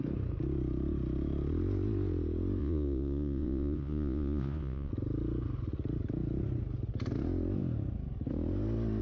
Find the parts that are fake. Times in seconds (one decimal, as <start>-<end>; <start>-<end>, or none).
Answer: 2.6-4.9